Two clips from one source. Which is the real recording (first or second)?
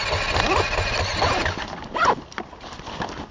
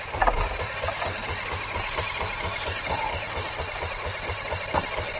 first